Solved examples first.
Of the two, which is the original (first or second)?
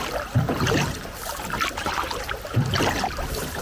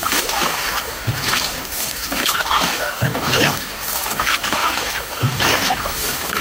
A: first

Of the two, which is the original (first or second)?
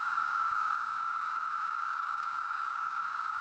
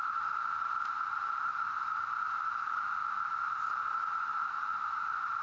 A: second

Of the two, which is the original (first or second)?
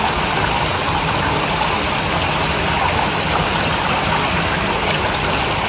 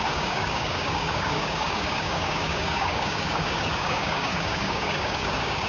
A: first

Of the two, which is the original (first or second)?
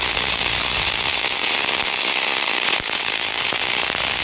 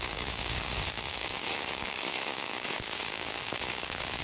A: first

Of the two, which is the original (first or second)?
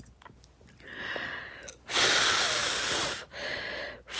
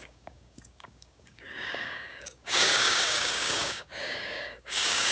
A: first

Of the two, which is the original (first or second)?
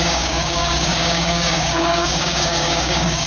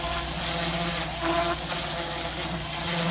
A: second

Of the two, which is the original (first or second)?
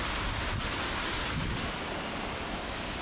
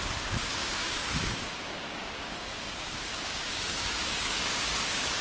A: first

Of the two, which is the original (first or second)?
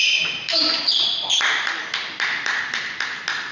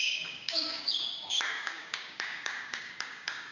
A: first